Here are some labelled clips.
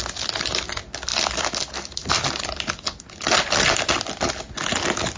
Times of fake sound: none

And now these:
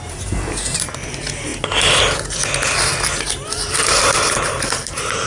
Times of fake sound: 0.0-1.5 (vocoder, BigVGAN v2); 3.2-5.3